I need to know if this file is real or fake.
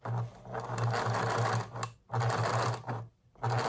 real